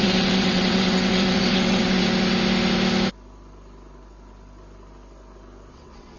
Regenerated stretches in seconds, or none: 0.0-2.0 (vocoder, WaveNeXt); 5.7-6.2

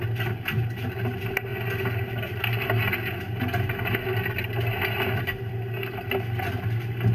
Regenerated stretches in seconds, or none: none

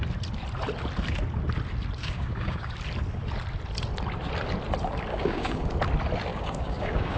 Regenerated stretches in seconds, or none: 2.0-2.7 (codec, DAC); 5.1-5.7; 6.3-7.2

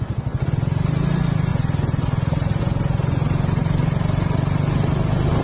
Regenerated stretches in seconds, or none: none

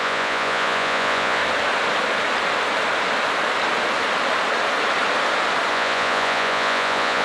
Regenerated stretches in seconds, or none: 0.0-1.4 (vocoder, Vocos); 5.7-7.2